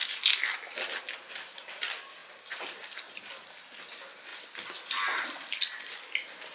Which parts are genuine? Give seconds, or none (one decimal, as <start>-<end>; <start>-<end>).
0.0-2.2; 3.2-4.3; 5.9-6.5

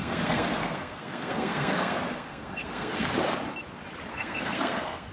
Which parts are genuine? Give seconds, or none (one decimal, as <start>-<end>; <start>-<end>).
3.1-4.1

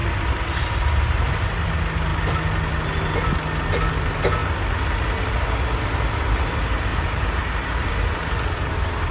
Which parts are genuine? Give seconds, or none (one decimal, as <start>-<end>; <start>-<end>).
1.4-6.9; 7.9-9.1

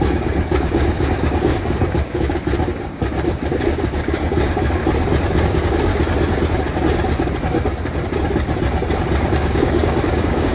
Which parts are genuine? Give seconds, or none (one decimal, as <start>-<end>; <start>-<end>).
4.8-5.4; 5.9-9.3

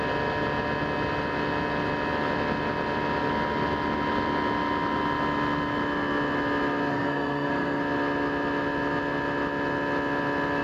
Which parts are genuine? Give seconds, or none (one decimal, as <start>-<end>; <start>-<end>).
0.0-6.9; 7.8-10.6

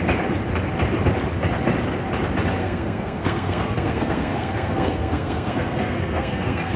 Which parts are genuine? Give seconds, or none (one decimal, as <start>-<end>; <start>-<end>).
0.0-2.6